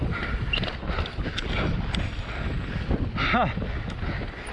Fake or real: real